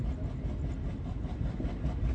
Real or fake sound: real